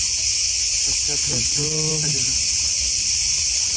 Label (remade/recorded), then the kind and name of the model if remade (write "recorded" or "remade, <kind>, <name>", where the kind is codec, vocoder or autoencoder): remade, vocoder, BigVGAN v2